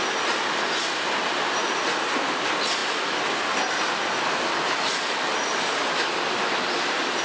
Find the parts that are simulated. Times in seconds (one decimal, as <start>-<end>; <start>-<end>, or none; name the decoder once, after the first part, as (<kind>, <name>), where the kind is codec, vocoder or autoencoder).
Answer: none

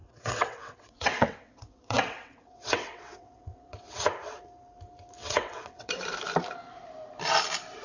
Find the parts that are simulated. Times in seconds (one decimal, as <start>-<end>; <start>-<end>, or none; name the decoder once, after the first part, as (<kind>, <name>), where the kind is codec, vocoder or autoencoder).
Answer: 0.0-4.0 (vocoder, WaveNeXt); 5.2-6.0

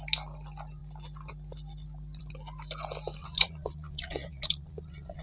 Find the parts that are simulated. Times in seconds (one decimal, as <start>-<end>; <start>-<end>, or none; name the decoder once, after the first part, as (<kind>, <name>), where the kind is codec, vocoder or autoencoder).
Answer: 3.2-5.2 (vocoder, Vocos)